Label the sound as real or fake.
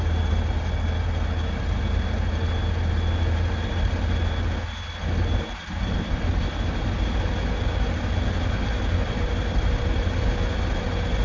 real